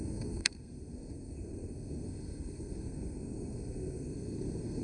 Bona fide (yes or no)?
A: no